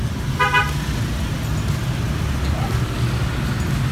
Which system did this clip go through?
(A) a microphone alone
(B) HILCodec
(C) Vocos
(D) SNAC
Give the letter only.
A